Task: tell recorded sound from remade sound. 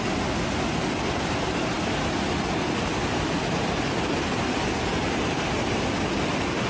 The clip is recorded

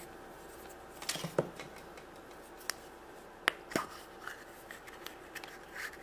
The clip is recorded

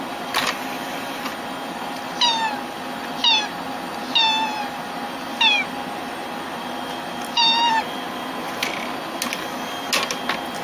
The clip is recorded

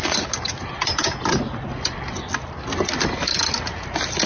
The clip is recorded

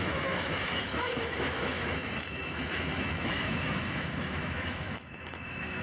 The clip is remade